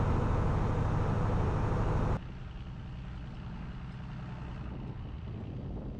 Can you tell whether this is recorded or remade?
recorded